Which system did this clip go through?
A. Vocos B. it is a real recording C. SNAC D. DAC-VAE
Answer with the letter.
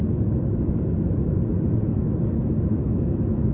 D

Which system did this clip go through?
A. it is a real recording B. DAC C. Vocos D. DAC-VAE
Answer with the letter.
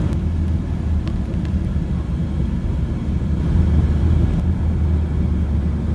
A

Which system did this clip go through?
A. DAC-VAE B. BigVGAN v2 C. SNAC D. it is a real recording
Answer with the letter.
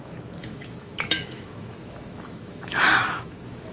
A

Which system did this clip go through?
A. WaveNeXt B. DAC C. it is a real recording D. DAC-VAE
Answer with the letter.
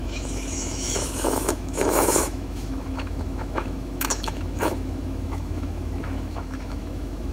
D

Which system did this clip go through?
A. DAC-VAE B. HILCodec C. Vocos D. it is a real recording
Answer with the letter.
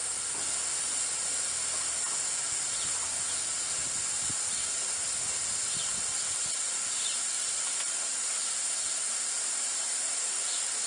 D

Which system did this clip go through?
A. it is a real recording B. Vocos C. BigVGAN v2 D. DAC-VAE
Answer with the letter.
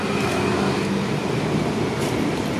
A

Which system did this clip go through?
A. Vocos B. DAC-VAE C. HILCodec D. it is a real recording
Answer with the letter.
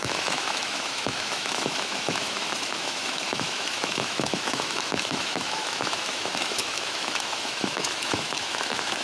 B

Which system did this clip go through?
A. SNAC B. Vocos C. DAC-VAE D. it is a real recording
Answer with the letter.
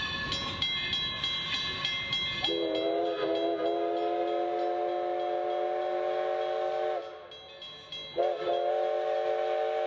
D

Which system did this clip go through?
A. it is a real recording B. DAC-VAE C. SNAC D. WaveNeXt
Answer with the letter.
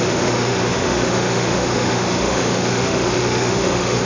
B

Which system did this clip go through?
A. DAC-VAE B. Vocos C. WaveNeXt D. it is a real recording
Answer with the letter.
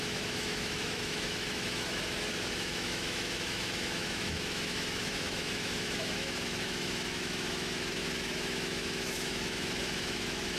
A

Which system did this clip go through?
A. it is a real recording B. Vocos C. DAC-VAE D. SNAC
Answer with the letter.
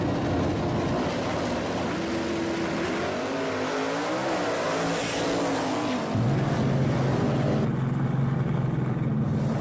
A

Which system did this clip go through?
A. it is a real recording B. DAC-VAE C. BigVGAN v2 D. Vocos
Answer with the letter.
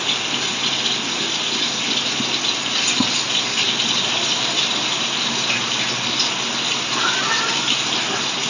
A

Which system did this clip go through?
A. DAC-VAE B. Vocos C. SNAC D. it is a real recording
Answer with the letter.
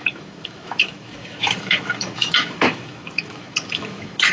A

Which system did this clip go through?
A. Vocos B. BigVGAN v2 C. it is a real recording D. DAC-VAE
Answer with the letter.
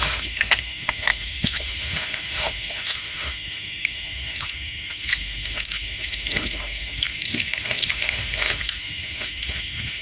D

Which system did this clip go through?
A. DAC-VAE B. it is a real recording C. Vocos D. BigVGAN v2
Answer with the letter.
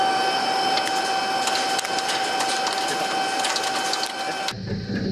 B